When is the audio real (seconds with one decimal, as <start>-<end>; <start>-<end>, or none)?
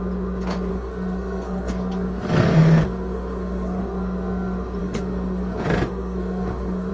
0.0-0.7; 3.8-4.8